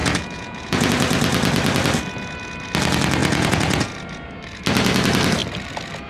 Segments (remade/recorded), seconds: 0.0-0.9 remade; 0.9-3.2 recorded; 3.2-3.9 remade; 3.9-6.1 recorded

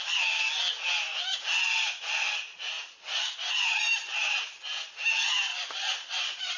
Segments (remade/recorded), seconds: 0.0-2.5 recorded; 2.5-3.8 remade; 3.8-5.5 recorded; 5.5-6.6 remade

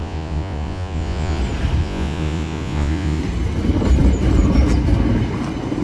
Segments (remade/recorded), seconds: 0.0-1.4 remade; 1.4-1.8 recorded; 1.8-3.2 remade; 3.2-5.8 recorded

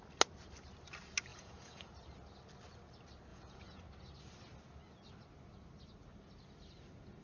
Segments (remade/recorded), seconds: 0.0-1.3 recorded; 1.3-1.9 remade; 1.9-3.3 recorded; 3.3-3.8 remade; 3.8-7.2 recorded

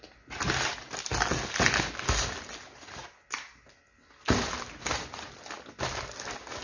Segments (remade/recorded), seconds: 0.0-6.6 recorded

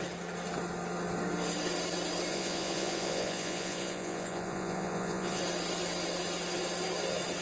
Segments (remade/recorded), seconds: 0.0-2.3 recorded; 2.3-5.4 remade; 5.4-7.4 recorded

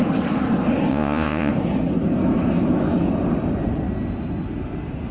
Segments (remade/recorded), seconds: 0.0-0.9 recorded; 0.9-1.5 remade; 1.5-5.1 recorded